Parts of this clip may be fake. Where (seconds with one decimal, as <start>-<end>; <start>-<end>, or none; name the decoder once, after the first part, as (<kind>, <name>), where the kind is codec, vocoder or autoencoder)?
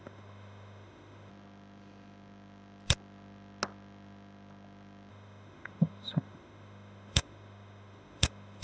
0.0-1.3 (autoencoder, DAC-VAE); 5.1-8.6